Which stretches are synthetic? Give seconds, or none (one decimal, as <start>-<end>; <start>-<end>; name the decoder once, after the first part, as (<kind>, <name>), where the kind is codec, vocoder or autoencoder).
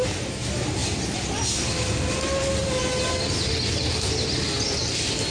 none